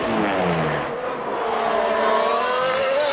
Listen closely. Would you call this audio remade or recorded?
recorded